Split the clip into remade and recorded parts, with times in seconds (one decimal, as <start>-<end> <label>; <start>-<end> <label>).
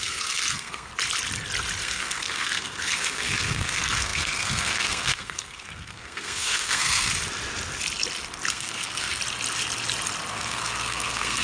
0.0-0.9 remade; 0.9-1.8 recorded; 1.8-7.1 remade; 7.1-8.5 recorded; 8.5-9.2 remade; 9.2-10.3 recorded; 10.3-11.4 remade